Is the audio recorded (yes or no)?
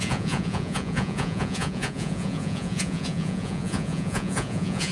no